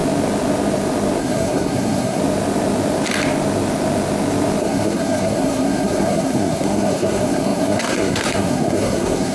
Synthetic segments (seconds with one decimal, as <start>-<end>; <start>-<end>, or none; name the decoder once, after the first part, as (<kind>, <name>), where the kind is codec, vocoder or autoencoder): 1.2-2.2 (codec, SNAC); 4.6-9.3